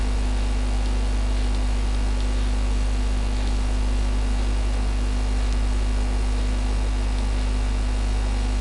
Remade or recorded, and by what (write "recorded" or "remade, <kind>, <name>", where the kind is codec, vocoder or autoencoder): recorded